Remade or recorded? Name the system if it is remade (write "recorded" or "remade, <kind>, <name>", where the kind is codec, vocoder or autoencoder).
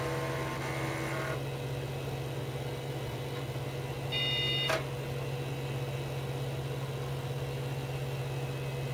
recorded